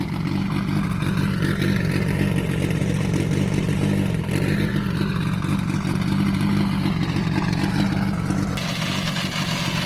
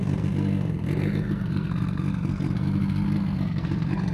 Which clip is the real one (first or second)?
first